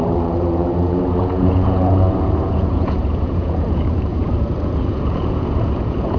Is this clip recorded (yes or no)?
no